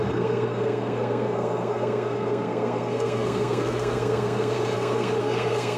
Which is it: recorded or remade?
remade